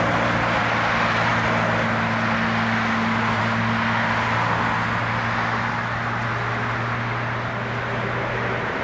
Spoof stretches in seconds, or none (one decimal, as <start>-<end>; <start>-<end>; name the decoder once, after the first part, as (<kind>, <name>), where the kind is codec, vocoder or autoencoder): none